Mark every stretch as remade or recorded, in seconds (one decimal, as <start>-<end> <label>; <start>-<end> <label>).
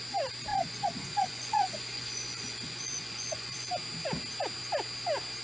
0.0-0.5 recorded; 0.5-3.7 remade; 3.7-5.4 recorded